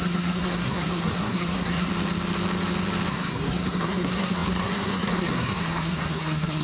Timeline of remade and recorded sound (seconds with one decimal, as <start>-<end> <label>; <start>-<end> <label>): 0.0-1.9 remade; 1.9-3.1 recorded; 3.1-6.6 remade